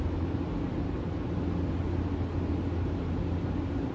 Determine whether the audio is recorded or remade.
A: recorded